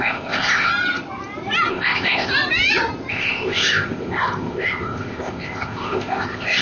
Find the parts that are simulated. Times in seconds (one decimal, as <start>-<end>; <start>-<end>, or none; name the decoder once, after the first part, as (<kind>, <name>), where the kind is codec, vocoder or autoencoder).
0.0-0.7 (codec, ZipCodec); 1.7-2.3; 3.1-6.6